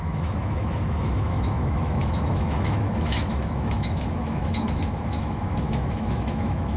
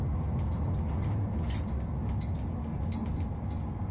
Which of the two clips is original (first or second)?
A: second